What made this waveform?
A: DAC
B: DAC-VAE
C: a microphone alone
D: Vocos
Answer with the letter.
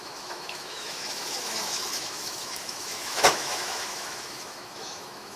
B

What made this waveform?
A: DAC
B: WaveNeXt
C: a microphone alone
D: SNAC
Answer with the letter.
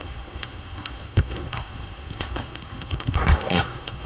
D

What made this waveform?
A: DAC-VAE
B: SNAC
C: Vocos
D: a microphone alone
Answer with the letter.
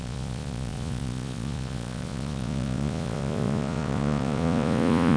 C